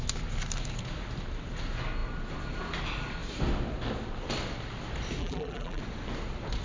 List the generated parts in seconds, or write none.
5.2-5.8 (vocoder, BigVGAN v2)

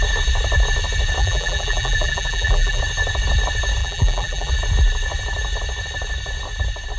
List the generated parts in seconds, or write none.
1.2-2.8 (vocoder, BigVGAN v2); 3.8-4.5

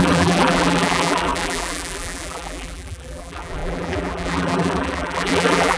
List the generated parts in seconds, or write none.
0.0-5.8 (vocoder, BigVGAN v2)

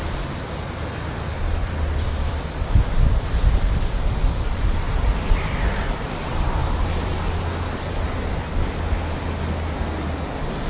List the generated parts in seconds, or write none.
1.6-3.7 (vocoder, BigVGAN v2); 6.6-7.4

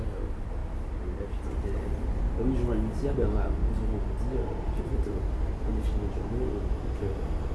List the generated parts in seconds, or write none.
0.0-0.6 (vocoder, BigVGAN v2); 3.1-3.6; 4.8-5.7; 7.0-7.5

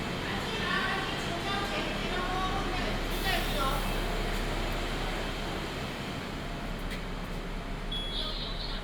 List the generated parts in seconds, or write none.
none